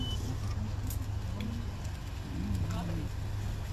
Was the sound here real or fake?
real